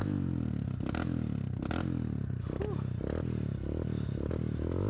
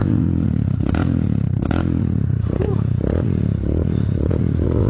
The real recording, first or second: first